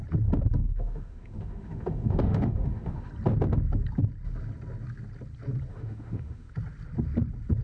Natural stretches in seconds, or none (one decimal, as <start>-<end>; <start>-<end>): 0.0-0.6; 3.1-5.7; 6.5-7.6

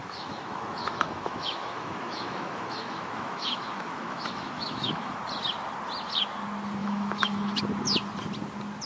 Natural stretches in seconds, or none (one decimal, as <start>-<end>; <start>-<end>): 5.2-6.8; 7.6-8.9

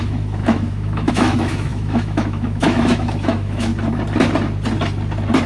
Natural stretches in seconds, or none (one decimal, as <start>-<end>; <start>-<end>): 3.7-5.5

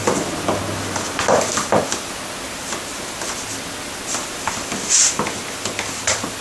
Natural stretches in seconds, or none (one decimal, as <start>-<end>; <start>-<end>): 0.0-6.4

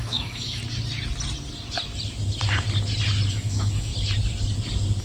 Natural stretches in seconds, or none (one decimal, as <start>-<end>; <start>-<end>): 0.6-3.3; 3.9-5.0

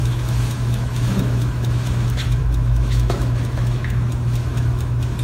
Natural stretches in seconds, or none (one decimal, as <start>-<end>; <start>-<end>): none